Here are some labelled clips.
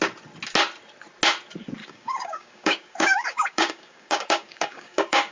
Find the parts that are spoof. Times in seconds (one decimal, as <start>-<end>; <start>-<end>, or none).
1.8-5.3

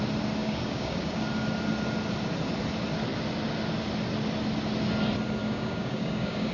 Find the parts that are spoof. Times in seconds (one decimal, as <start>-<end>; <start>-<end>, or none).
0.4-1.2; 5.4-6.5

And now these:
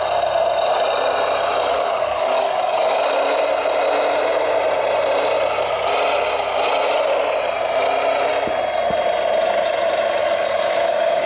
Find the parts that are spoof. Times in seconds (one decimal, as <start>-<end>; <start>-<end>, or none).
1.7-3.0; 10.2-11.3

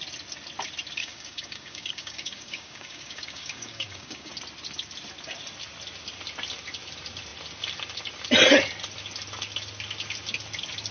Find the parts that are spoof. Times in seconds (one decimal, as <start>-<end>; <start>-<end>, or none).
1.0-4.3

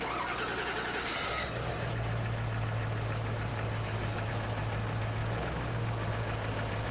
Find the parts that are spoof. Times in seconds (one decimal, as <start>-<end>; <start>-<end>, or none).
1.1-1.7; 3.5-4.3

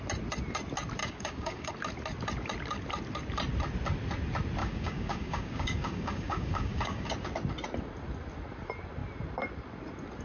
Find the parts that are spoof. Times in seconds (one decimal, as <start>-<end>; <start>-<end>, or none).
1.0-1.7; 4.6-7.1